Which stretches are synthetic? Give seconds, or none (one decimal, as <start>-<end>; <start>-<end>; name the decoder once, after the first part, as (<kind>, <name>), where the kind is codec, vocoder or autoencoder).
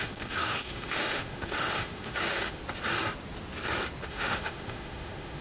0.0-2.6 (autoencoder, DAC-VAE); 4.1-5.4